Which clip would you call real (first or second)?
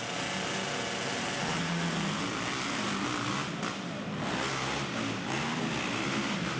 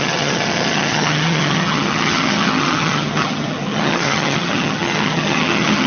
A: first